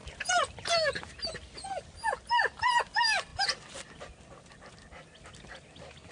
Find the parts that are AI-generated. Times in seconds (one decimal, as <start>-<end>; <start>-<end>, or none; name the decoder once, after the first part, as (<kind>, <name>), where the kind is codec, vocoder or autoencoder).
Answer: none